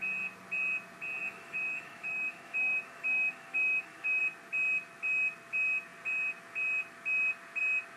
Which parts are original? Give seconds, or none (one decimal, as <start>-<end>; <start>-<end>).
0.0-1.2; 4.2-8.0